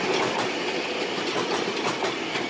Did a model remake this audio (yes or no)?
no